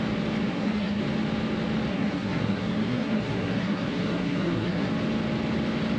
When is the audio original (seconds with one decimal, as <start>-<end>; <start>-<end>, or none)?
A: 0.0-0.5; 1.0-1.9; 4.9-6.0